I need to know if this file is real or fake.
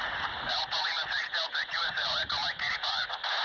fake